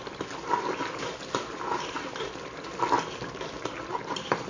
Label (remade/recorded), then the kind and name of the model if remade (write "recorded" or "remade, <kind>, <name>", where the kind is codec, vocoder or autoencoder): recorded